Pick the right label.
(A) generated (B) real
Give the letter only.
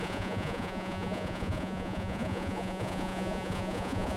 A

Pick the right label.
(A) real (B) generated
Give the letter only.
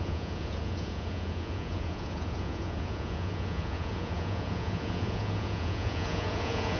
B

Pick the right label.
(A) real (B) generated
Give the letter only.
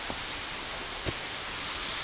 A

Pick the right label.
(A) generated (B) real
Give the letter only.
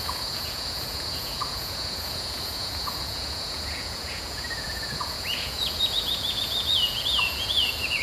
A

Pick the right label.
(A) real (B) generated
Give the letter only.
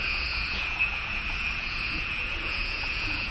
B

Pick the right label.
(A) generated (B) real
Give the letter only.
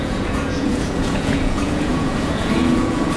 A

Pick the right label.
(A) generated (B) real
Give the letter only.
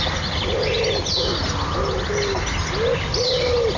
B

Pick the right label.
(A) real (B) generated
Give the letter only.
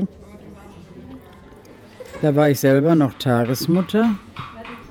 B